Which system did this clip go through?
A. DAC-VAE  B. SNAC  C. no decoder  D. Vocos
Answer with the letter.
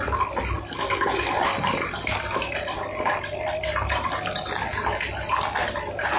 C